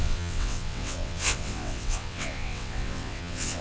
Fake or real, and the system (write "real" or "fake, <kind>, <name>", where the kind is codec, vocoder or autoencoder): fake, vocoder, WaveNeXt